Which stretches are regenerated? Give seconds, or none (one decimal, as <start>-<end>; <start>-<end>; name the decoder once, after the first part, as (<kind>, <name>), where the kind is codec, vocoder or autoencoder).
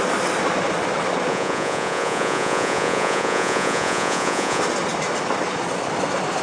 1.3-4.6 (vocoder, Vocos)